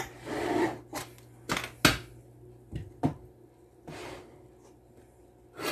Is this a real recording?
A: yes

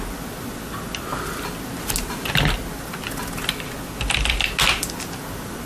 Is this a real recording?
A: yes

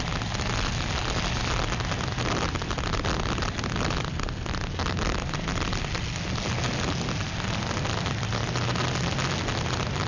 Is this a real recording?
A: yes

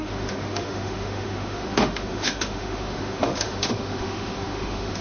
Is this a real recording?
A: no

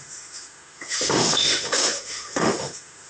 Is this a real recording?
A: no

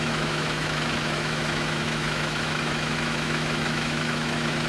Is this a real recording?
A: no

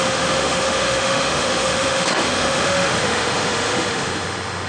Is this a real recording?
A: no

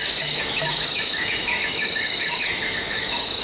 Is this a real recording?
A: no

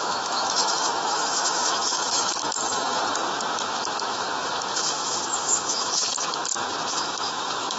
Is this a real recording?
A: no